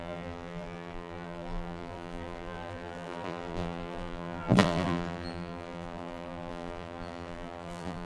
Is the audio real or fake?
fake